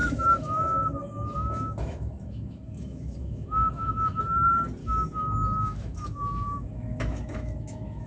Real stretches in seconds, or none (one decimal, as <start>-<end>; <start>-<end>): 4.2-4.8